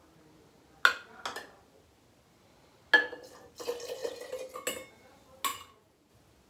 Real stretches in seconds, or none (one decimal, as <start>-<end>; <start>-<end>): 0.0-5.5; 6.1-6.5